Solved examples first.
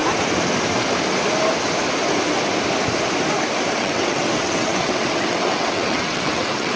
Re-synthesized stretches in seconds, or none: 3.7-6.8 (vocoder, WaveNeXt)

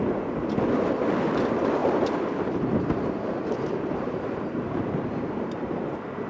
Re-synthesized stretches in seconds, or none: 1.8-5.6 (vocoder, BigVGAN v2)

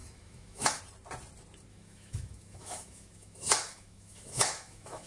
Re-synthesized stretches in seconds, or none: 0.0-0.8 (autoencoder, DAC-VAE); 1.7-5.1